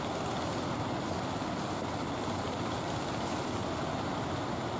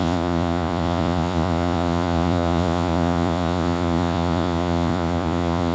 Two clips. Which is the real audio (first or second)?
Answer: first